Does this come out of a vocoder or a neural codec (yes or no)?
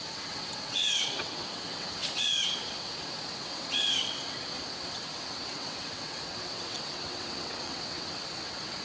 yes